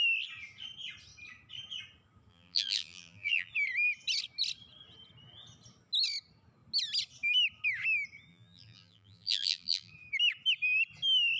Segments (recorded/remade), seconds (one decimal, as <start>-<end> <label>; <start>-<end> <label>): 0.0-2.3 recorded; 2.3-3.5 remade; 3.5-8.3 recorded; 8.3-9.9 remade; 9.9-11.4 recorded

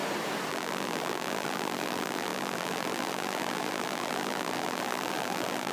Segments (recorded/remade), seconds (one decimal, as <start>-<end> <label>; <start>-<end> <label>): 0.0-0.5 recorded; 0.5-5.7 remade

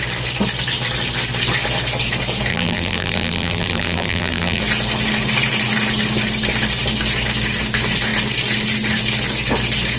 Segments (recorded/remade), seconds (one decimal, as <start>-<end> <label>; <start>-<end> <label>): 0.0-2.5 recorded; 2.5-4.6 remade; 4.6-10.0 recorded

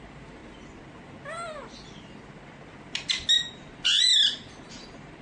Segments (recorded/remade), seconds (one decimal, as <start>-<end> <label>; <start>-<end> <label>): 0.0-0.4 remade; 0.4-3.5 recorded; 3.5-4.1 remade; 4.1-4.7 recorded; 4.7-5.2 remade

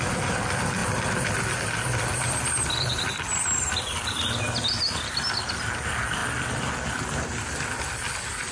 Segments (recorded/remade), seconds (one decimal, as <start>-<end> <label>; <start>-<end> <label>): 0.0-8.5 recorded

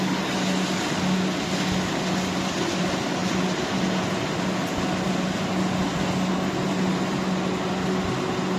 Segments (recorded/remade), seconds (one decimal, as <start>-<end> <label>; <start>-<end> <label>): 0.0-8.6 recorded

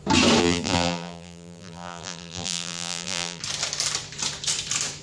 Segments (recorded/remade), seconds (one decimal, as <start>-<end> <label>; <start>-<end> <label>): 0.0-0.4 recorded; 0.4-3.4 remade; 3.4-5.0 recorded